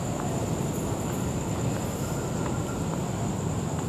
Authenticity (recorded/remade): recorded